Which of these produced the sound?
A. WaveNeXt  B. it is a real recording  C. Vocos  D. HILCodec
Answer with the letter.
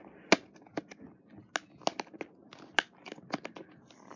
B